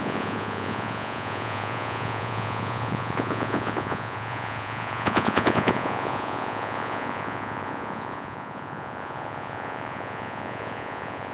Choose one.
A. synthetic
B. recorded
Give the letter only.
A